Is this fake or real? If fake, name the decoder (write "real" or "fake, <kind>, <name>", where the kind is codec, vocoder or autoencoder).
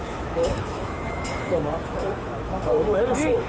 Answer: fake, autoencoder, DAC-VAE